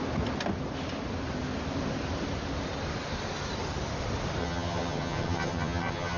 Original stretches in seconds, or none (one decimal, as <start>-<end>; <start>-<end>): 0.0-4.4